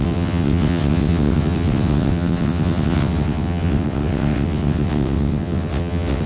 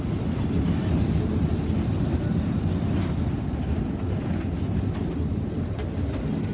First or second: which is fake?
first